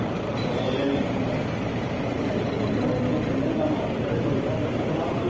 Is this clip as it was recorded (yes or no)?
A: no